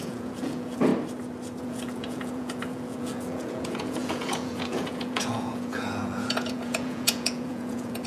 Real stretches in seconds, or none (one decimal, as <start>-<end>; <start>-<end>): 0.9-1.6